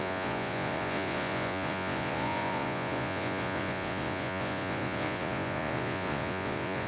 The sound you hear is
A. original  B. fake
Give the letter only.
B